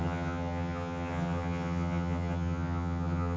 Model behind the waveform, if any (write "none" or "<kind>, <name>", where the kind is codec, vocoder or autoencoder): vocoder, HiFi-GAN